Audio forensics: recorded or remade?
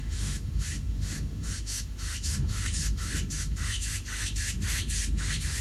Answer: remade